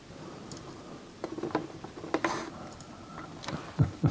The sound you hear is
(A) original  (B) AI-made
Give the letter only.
A